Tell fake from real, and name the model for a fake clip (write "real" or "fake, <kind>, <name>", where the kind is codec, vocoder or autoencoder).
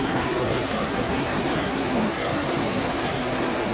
fake, codec, SNAC